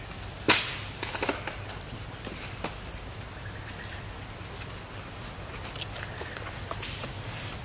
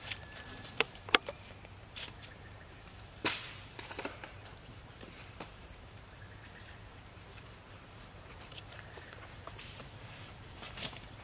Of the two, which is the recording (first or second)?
first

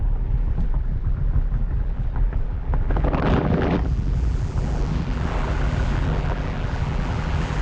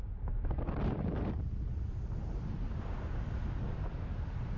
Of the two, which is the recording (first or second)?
second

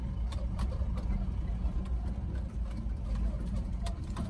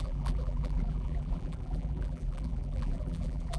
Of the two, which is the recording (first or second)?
first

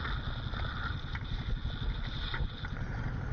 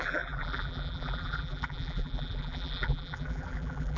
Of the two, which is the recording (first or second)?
first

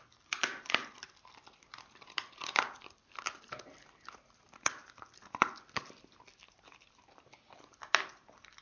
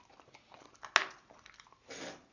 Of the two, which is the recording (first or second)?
second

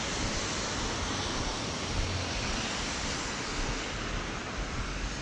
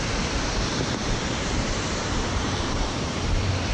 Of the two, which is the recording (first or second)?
first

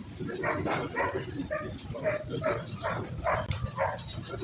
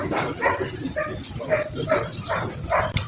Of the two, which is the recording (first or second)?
first